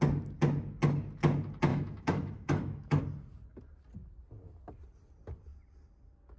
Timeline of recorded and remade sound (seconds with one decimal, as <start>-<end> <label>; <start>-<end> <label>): 0.0-1.7 recorded; 1.7-3.0 remade; 3.0-6.4 recorded